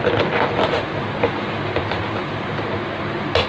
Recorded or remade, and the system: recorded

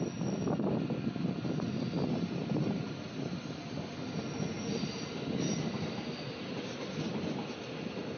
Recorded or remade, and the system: recorded